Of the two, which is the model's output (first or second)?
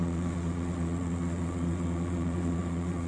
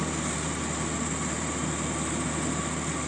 first